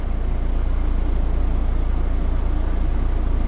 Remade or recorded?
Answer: recorded